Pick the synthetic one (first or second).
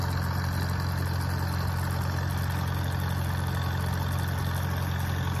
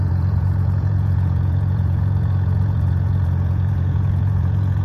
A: second